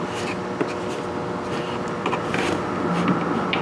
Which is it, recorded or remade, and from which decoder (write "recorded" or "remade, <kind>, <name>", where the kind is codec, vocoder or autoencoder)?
recorded